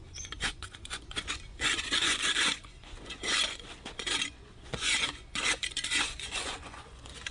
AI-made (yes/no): yes